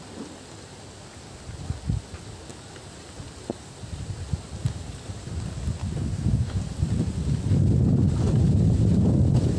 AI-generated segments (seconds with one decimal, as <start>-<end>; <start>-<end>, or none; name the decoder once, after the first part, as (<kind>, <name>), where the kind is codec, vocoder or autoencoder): 5.8-6.6 (codec, DAC)

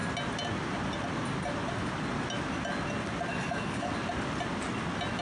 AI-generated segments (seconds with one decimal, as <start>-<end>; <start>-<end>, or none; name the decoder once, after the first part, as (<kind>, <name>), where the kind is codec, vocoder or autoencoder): 3.3-3.9 (codec, DAC)

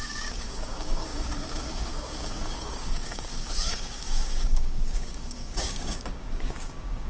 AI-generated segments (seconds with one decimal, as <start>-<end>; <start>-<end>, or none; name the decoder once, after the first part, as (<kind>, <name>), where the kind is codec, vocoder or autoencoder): 0.0-7.1 (codec, DAC)

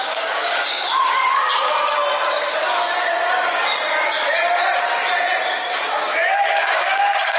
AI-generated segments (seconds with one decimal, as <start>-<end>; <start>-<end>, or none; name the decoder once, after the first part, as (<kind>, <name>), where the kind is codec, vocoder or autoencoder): 0.0-1.5 (codec, DAC); 5.9-7.4

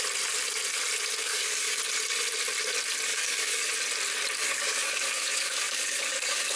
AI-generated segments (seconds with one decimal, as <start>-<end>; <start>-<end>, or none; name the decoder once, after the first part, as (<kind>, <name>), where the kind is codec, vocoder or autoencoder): 1.2-1.8 (codec, DAC); 3.1-3.7; 4.4-6.6

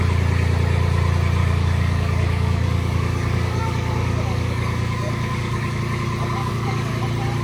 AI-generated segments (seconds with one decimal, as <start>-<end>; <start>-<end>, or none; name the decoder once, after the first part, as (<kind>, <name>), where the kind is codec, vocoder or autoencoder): 1.4-5.8 (codec, DAC); 6.4-6.9